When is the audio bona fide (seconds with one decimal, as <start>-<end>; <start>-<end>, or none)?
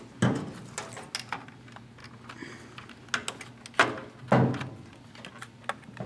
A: 0.0-6.1